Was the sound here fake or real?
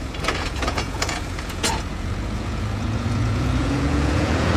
fake